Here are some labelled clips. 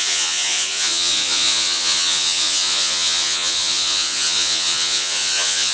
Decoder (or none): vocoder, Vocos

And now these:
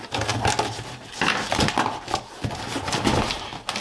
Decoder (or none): none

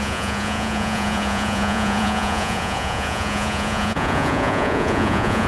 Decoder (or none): vocoder, Vocos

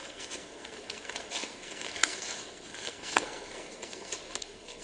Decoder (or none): codec, SNAC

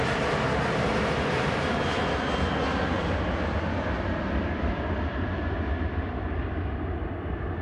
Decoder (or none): none